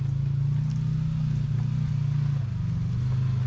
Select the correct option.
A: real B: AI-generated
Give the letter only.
A